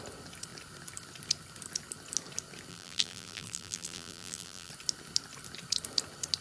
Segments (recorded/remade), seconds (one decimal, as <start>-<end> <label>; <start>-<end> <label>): 0.0-2.7 recorded; 2.7-4.7 remade; 4.7-6.4 recorded